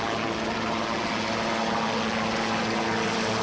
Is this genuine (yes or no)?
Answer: yes